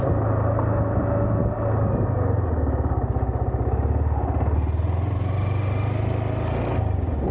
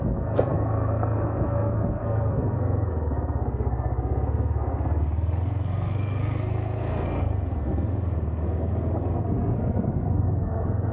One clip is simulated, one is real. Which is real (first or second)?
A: first